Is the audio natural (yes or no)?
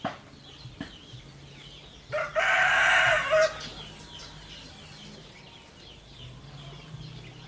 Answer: yes